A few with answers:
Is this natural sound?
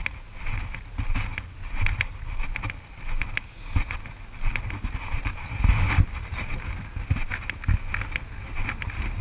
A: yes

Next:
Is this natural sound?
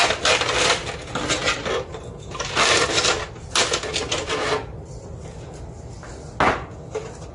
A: yes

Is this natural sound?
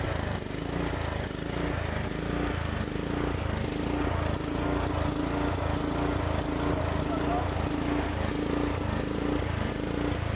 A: yes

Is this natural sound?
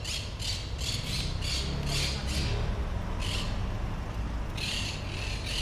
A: yes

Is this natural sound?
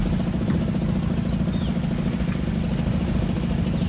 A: yes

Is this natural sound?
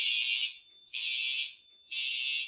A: no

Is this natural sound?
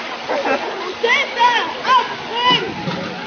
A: yes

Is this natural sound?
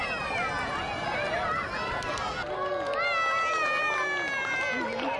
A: yes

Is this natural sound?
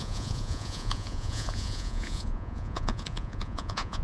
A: no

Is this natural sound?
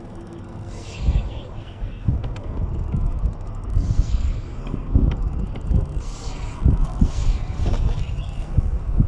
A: no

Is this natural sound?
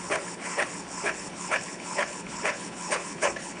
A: no